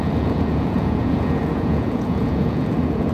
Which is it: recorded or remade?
remade